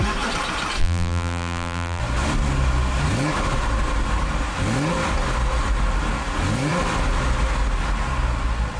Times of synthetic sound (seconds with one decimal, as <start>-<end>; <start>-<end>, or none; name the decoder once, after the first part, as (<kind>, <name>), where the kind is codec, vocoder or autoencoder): 0.8-2.0 (vocoder, BigVGAN v2)

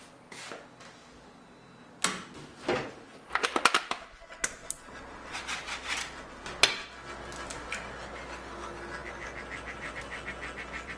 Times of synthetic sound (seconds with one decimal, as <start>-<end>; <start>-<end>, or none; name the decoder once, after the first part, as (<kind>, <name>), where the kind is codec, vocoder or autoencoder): none

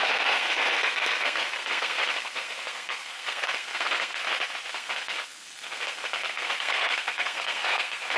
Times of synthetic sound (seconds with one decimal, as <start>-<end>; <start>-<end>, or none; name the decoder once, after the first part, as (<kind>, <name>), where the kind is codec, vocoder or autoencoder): 0.0-4.2 (codec, SNAC); 4.7-8.2

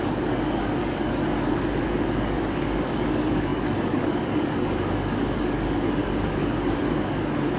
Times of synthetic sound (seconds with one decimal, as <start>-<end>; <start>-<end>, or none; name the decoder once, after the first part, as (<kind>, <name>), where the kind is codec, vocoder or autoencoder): 0.0-7.6 (codec, DAC)